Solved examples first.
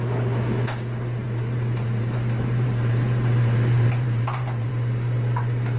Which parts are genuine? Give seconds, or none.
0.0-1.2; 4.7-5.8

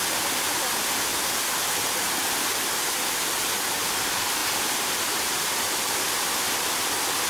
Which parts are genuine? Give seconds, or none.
0.0-1.1; 2.2-4.4; 5.3-7.3

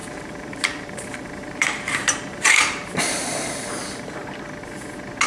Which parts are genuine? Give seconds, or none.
3.0-5.3

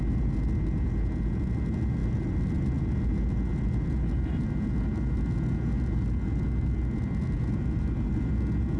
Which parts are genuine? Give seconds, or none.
0.0-8.8

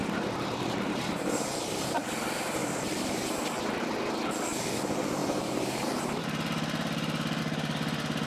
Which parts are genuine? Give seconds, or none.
2.0-2.6; 3.8-5.2; 7.4-8.3

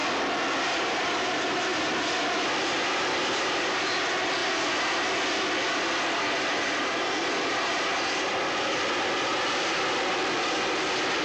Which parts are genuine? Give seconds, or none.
0.0-0.8; 4.4-6.6

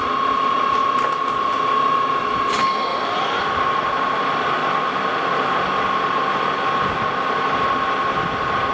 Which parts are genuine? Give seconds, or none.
0.0-2.9; 4.0-8.7